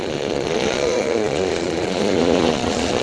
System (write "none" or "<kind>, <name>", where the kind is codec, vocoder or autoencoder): vocoder, Vocos